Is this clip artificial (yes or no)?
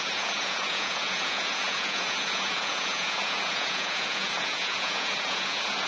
yes